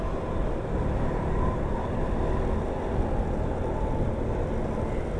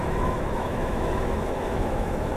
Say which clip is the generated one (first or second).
second